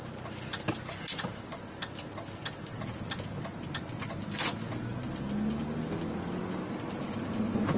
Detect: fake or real real